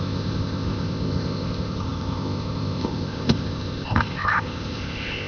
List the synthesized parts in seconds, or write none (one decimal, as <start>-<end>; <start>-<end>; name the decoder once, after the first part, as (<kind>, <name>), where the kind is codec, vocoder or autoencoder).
0.0-5.3 (codec, ZipCodec)